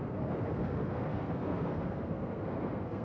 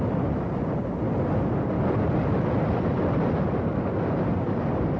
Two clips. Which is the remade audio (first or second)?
first